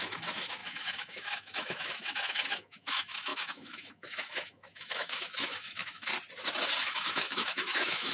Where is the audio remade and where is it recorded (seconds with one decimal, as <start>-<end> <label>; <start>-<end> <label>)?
0.0-6.1 remade; 6.1-6.9 recorded; 6.9-8.1 remade